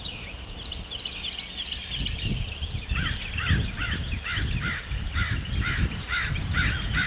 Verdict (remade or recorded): recorded